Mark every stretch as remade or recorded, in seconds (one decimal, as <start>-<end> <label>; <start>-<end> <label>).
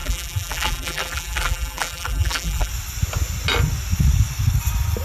0.0-2.7 remade; 2.7-5.0 recorded